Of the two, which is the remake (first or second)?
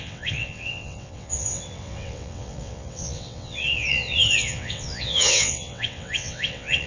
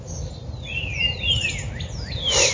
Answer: first